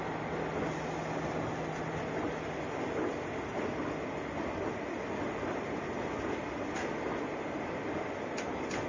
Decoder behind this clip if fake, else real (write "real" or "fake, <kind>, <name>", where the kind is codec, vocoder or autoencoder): real